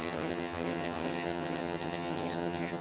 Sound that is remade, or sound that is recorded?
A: remade